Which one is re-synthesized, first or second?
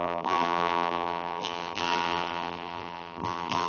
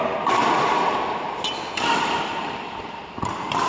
first